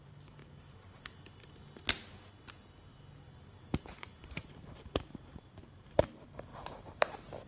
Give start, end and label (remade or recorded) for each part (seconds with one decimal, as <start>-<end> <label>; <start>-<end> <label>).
0.0-0.4 remade; 0.4-3.6 recorded; 3.6-6.5 remade; 6.5-7.5 recorded